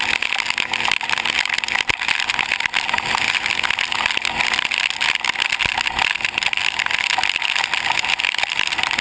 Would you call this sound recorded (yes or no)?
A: yes